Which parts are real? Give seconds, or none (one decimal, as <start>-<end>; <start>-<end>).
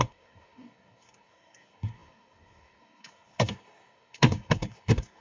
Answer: none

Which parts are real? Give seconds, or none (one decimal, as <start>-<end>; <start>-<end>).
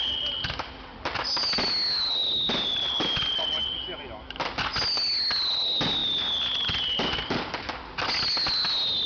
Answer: 0.0-9.1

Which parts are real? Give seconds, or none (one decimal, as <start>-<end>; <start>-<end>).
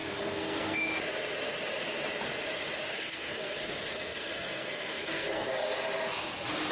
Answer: 0.8-2.9; 5.5-6.7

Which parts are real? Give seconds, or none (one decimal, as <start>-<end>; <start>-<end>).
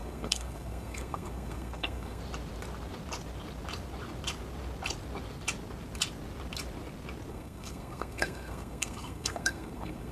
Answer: 2.2-7.3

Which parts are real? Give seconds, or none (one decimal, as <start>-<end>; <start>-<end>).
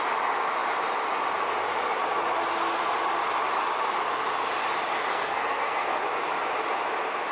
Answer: 0.0-5.1; 6.0-7.3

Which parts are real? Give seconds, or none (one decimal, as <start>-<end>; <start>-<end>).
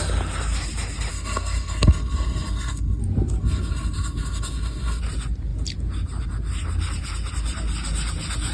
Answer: 0.0-1.1; 3.0-3.4; 5.0-8.5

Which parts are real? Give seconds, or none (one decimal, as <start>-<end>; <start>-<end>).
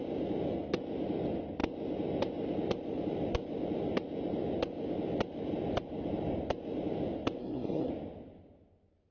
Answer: 0.0-7.4; 7.9-9.1